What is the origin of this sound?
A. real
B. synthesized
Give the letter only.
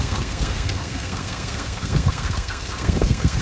B